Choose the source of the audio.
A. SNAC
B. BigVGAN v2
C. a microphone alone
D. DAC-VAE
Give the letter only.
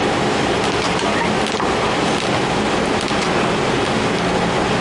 C